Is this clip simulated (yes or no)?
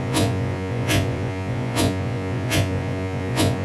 yes